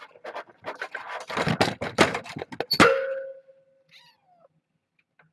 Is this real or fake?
real